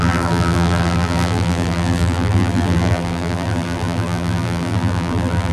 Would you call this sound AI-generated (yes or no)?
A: yes